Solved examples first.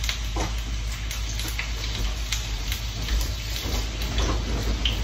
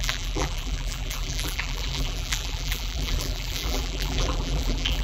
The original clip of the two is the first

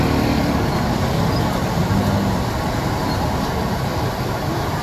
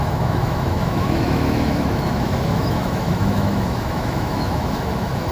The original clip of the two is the first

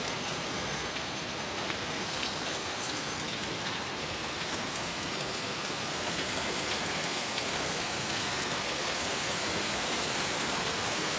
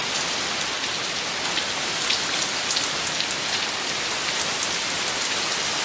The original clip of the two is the second